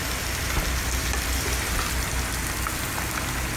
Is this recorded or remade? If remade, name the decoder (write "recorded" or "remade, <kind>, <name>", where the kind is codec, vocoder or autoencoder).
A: recorded